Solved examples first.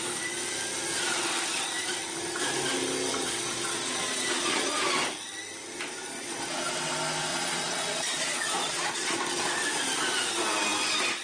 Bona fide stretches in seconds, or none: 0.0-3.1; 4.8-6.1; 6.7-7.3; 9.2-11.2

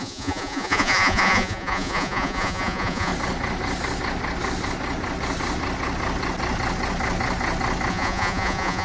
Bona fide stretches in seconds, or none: 3.1-7.9